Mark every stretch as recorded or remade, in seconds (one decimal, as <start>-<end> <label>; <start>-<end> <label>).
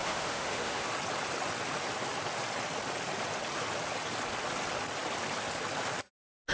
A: 0.0-0.9 remade; 0.9-6.5 recorded